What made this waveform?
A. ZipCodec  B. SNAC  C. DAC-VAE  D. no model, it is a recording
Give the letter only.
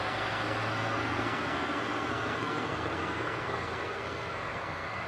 B